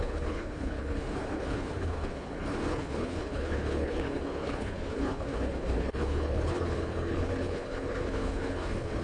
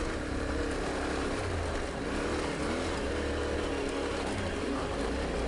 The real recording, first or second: second